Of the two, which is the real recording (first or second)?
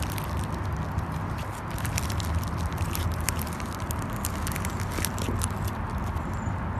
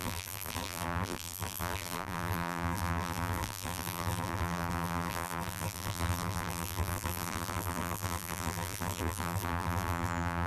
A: first